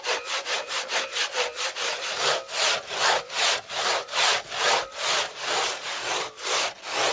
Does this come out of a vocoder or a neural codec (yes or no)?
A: no